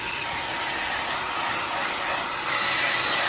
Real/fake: fake